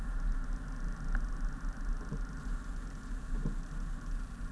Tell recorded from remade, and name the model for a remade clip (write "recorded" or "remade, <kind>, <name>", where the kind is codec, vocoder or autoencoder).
recorded